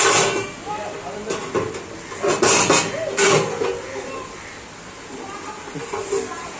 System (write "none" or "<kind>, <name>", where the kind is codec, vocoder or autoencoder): none